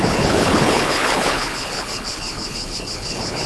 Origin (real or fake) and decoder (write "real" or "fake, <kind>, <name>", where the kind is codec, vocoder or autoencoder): fake, codec, HILCodec